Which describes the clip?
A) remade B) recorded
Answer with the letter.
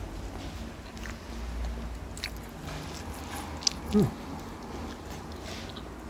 B